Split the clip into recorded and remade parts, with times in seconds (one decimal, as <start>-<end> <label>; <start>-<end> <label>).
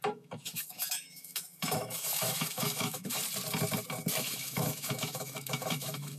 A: 0.0-3.2 remade; 3.2-4.2 recorded; 4.2-6.2 remade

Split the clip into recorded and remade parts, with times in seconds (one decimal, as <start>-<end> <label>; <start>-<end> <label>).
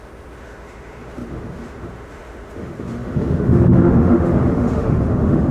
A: 0.0-5.5 remade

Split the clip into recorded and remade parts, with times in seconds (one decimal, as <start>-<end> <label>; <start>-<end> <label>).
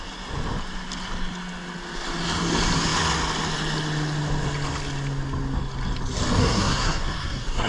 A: 0.0-6.4 recorded; 6.4-7.7 remade